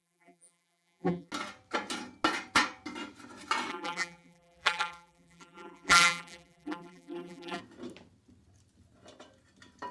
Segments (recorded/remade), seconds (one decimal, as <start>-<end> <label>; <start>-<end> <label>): 0.0-1.3 remade; 1.3-3.7 recorded; 3.7-7.6 remade; 7.6-9.9 recorded